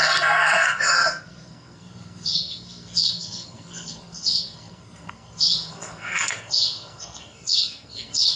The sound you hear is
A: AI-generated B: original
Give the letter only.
A